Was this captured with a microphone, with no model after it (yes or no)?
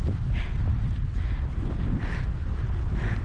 yes